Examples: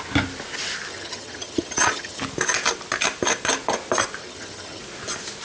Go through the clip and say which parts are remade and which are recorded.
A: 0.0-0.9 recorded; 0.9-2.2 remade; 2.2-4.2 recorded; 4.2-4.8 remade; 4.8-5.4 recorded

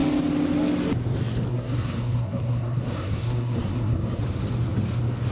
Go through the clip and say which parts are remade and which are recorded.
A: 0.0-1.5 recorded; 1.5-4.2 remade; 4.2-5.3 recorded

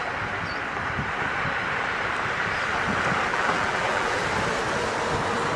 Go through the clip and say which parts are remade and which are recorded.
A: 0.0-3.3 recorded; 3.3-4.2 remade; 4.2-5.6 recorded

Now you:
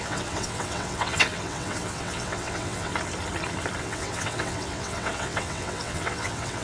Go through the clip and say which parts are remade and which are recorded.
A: 0.0-2.9 remade; 2.9-3.8 recorded; 3.8-6.6 remade

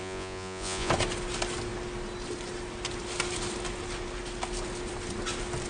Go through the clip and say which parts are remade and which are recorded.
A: 0.0-0.9 remade; 0.9-5.7 recorded

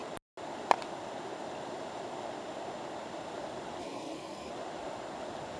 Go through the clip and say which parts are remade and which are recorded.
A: 0.0-3.8 recorded; 3.8-4.5 remade; 4.5-5.6 recorded

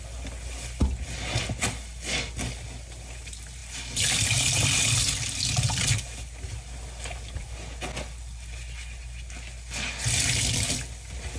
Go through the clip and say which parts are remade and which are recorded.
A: 0.0-11.4 recorded

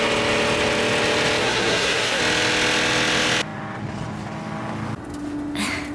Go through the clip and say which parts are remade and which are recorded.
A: 0.0-1.4 recorded; 1.4-2.2 remade; 2.2-5.9 recorded